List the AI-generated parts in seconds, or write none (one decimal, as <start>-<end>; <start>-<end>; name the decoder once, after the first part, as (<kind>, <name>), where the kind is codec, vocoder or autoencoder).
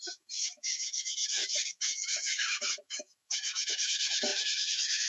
0.0-5.1 (autoencoder, DAC-VAE)